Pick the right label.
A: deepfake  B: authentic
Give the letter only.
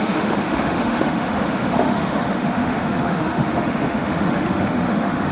A